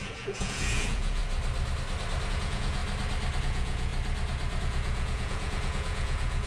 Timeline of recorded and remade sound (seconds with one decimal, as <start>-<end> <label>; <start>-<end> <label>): 0.0-1.2 remade; 1.2-2.3 recorded; 2.3-2.8 remade; 2.8-3.4 recorded; 3.4-3.9 remade; 3.9-4.6 recorded; 4.6-6.5 remade